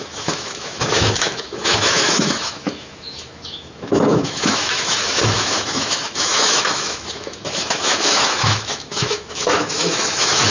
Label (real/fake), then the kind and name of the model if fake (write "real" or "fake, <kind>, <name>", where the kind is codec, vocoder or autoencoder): fake, autoencoder, DAC-VAE